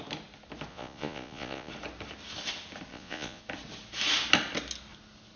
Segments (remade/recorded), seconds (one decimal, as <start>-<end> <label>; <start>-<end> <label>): 0.0-0.7 recorded; 0.7-1.7 remade; 1.7-2.9 recorded; 2.9-3.4 remade; 3.4-5.4 recorded